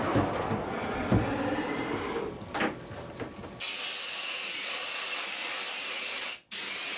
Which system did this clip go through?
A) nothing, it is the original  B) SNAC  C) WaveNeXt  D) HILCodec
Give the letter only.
A